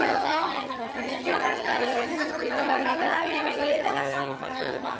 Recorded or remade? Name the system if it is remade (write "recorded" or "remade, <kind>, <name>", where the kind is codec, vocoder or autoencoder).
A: remade, vocoder, HiFi-GAN